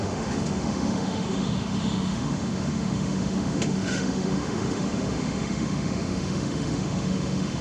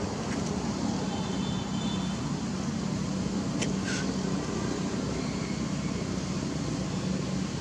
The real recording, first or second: second